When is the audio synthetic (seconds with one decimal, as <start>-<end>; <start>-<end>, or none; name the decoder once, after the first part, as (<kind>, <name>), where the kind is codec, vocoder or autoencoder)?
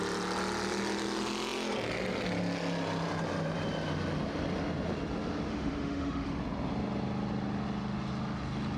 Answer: 5.5-6.4 (autoencoder, DAC-VAE)